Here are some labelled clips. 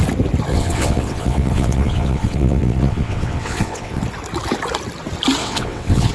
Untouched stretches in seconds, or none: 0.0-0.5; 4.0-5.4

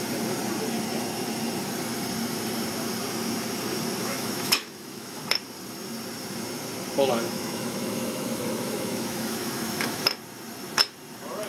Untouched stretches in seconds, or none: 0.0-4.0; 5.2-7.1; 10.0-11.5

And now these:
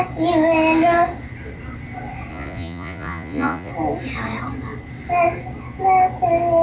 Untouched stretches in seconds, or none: 0.0-2.3; 3.7-6.6

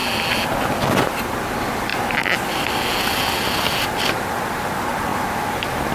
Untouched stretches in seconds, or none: 0.0-5.9

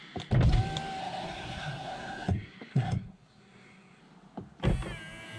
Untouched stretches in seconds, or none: 0.0-1.0; 4.0-5.4

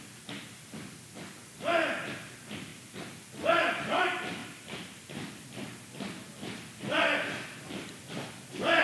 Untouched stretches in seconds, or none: 0.0-8.8

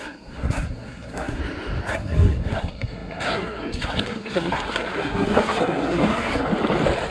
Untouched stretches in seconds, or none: 1.4-1.9; 6.5-7.1

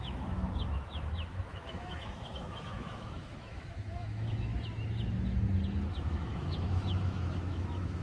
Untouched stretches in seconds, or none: 4.5-5.9